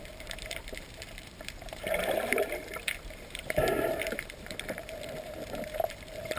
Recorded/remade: remade